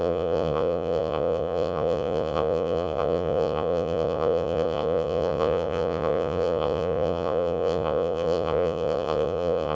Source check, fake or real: fake